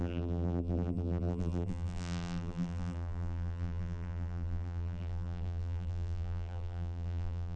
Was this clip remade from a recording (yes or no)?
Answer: yes